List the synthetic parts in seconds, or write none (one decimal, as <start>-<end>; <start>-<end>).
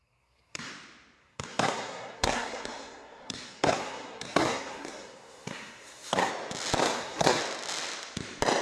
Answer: 0.0-0.7; 1.2-6.3; 6.8-7.4